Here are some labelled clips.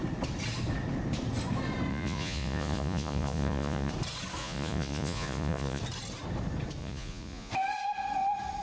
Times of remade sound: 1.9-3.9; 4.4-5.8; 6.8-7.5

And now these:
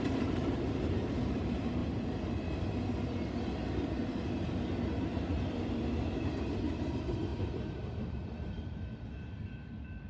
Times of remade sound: 0.0-1.8; 6.2-10.1

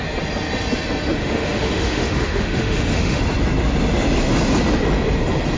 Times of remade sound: 1.2-3.2

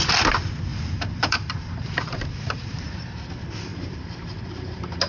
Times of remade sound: 0.7-3.0; 3.7-5.1

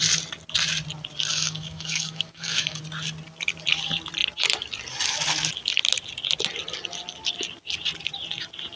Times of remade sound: 1.3-2.8